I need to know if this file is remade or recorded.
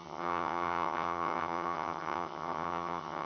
remade